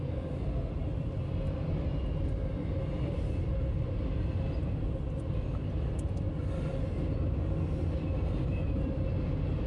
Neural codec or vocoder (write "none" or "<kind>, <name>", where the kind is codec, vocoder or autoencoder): none